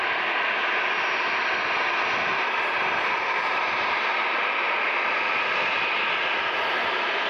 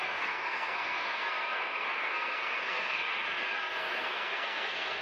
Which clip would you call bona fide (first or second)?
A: first